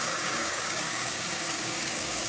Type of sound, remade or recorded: remade